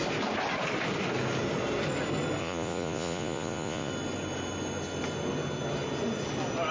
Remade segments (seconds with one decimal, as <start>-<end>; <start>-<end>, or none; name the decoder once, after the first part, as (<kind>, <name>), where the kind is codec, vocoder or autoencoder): 2.4-3.9 (vocoder, Vocos)